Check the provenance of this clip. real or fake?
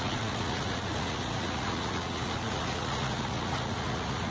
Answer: fake